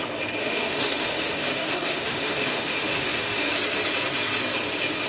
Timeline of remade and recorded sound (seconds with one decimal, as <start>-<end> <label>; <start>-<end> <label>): 0.0-0.4 recorded; 0.4-3.5 remade; 3.5-5.1 recorded